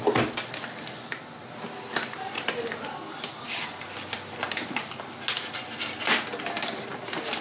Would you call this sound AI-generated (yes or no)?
no